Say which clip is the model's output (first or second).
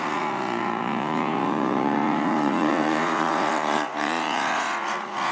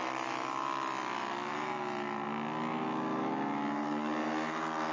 first